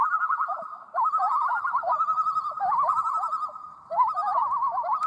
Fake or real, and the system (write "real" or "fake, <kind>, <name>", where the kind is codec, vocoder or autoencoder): fake, vocoder, BigVGAN v2